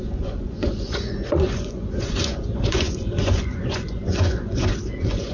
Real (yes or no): no